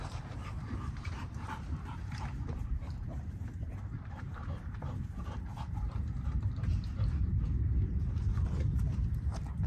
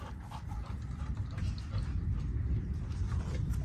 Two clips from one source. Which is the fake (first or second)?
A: first